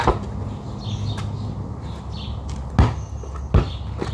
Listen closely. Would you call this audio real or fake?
real